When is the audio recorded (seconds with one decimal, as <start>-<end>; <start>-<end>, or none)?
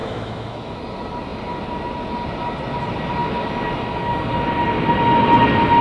0.8-5.8